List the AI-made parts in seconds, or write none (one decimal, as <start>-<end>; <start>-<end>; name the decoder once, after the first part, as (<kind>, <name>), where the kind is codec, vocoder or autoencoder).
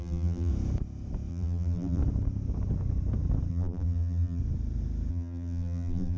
0.0-0.5 (vocoder, BigVGAN v2); 1.3-2.0; 3.5-4.4; 5.1-6.2